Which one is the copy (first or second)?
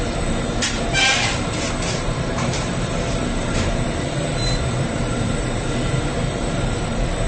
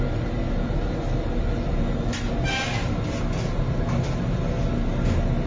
first